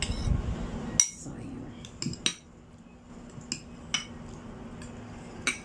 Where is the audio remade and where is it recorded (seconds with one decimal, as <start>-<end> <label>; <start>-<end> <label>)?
0.0-2.3 recorded; 2.3-3.1 remade; 3.1-5.6 recorded